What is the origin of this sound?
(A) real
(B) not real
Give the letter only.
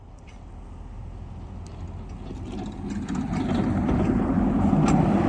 A